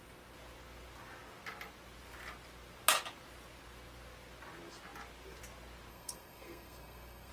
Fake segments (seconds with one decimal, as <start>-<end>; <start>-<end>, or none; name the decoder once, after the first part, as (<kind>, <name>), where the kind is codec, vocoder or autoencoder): 5.9-7.3 (codec, SNAC)